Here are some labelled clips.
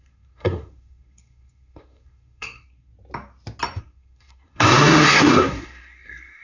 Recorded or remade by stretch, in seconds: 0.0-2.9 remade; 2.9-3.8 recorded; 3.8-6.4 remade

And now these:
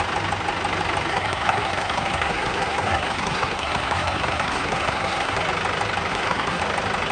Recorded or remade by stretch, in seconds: 0.0-1.1 recorded; 1.1-5.4 remade; 5.4-6.1 recorded; 6.1-6.6 remade; 6.6-7.1 recorded

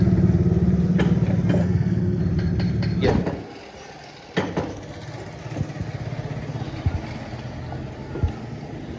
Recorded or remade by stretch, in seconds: 0.0-1.6 recorded; 1.6-2.2 remade; 2.2-9.0 recorded

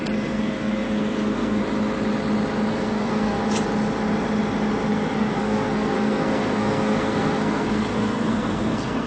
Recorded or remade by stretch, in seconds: 0.0-1.6 remade; 1.6-2.7 recorded; 2.7-3.4 remade; 3.4-4.9 recorded; 4.9-9.1 remade